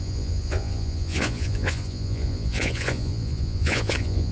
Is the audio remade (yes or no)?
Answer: yes